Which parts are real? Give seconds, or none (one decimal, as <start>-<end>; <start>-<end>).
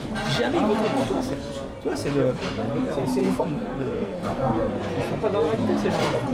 0.0-0.8; 1.5-3.2; 4.8-6.3